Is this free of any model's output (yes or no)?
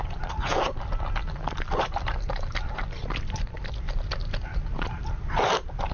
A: yes